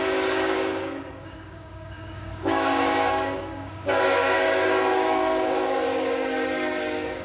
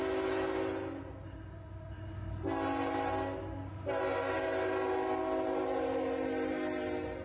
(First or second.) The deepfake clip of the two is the first